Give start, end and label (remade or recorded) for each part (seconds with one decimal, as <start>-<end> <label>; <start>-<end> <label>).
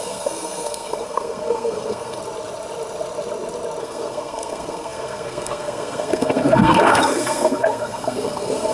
0.0-2.2 remade; 2.2-3.8 recorded; 3.8-8.7 remade